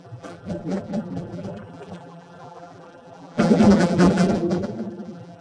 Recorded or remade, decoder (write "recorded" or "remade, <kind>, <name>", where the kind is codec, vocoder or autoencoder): remade, vocoder, BigVGAN v2